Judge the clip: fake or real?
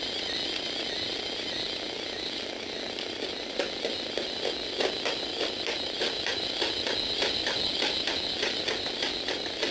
real